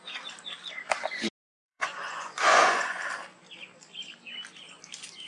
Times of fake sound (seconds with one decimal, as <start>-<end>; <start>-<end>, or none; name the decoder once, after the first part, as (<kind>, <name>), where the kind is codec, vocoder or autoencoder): 1.5-3.0 (vocoder, Vocos)